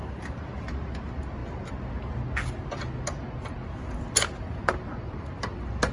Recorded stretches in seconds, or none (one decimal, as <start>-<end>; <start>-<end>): 0.0-5.9